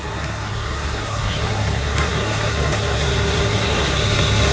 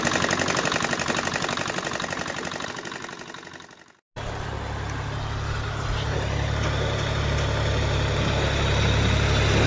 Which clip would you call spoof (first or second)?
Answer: first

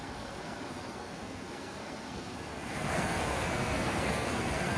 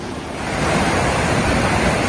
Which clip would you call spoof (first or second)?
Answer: first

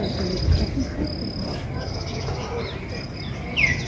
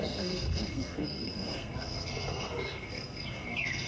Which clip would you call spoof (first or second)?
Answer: second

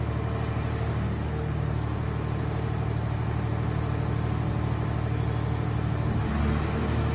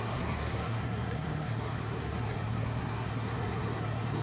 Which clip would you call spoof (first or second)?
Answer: second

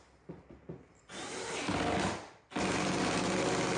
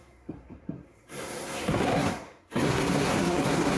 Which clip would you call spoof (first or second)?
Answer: second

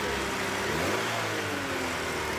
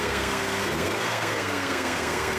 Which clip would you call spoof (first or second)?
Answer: second